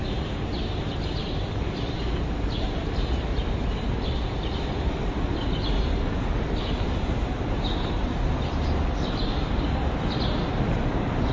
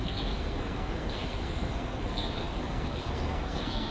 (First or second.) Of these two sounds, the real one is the first